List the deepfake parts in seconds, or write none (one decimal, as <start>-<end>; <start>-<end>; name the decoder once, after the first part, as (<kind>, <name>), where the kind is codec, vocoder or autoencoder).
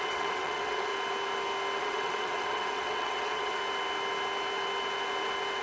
0.0-0.9 (vocoder, WaveNeXt); 1.8-3.6